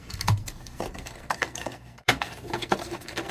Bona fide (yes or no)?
no